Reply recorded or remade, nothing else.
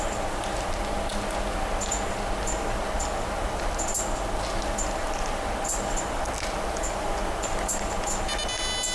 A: recorded